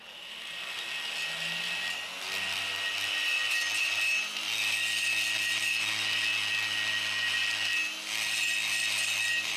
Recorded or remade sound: recorded